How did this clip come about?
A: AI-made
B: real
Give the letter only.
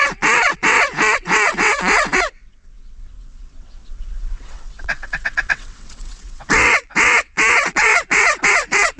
A